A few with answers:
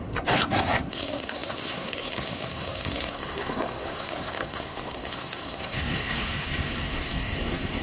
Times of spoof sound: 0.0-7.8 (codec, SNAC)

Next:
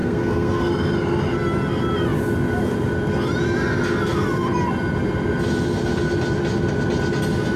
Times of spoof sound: 0.0-0.7 (codec, SNAC)

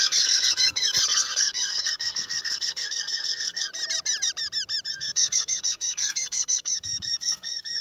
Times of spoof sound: 0.0-3.7 (codec, SNAC); 4.9-7.8

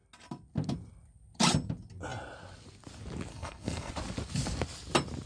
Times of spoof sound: 3.3-3.9 (codec, SNAC)

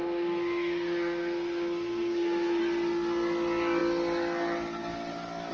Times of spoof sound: 0.0-2.6 (codec, SNAC)